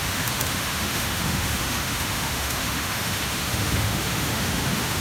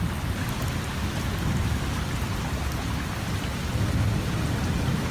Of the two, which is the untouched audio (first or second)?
second